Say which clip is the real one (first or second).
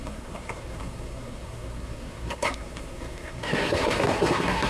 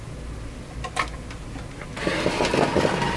second